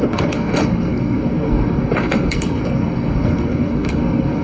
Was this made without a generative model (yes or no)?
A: no